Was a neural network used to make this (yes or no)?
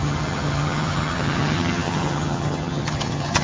yes